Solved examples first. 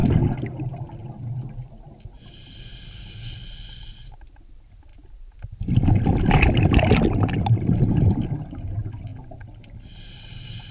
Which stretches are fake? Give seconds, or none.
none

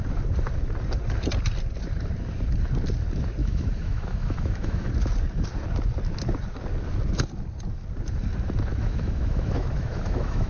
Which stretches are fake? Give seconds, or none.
3.4-4.9 (autoencoder, DAC-VAE); 8.7-10.5

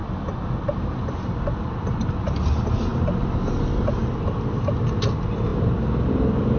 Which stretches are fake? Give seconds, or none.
none

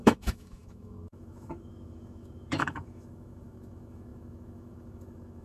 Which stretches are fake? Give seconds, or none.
0.0-5.4 (autoencoder, DAC-VAE)